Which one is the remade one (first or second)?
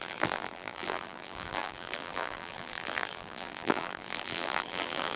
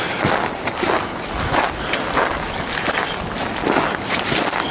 first